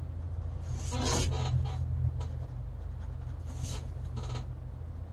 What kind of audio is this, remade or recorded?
recorded